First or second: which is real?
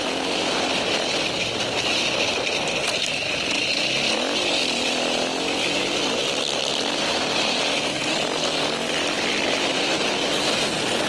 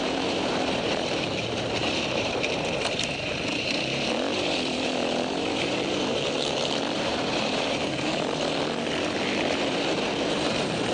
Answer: first